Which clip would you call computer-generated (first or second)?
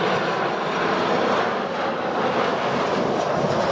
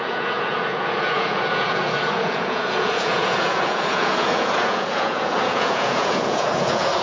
second